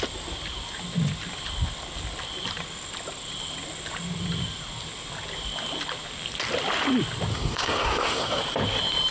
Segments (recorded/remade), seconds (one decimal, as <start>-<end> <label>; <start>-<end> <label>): 0.0-7.3 recorded; 7.3-8.4 remade; 8.4-9.1 recorded

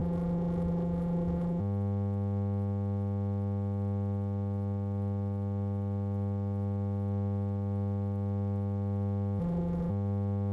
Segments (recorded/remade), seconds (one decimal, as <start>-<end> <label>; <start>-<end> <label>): 0.0-1.6 remade; 1.6-9.4 recorded; 9.4-9.9 remade; 9.9-10.5 recorded

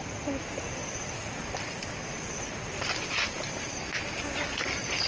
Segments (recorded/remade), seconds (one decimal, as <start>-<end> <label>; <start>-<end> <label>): 0.0-0.8 recorded; 0.8-3.9 remade; 3.9-5.1 recorded

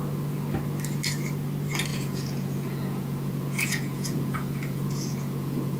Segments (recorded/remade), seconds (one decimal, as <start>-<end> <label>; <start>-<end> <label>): 0.0-1.9 recorded; 1.9-5.8 remade

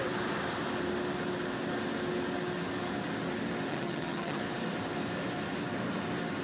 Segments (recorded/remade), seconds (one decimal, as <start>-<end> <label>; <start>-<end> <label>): 0.0-3.7 recorded; 3.7-4.4 remade; 4.4-6.4 recorded